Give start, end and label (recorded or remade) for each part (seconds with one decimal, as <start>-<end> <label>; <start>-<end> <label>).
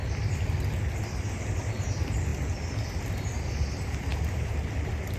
0.0-5.2 recorded